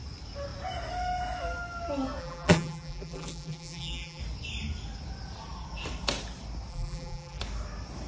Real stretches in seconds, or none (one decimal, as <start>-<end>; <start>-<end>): 0.0-2.2; 4.2-6.7; 7.4-8.1